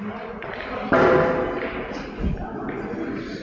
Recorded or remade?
recorded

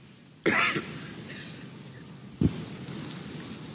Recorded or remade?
recorded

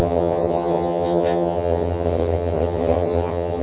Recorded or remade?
remade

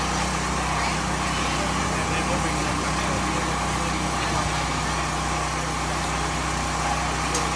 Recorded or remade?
recorded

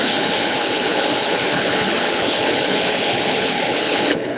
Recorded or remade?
remade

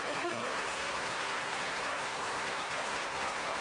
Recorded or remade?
remade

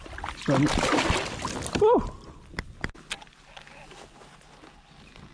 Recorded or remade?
recorded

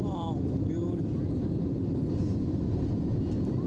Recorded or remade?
recorded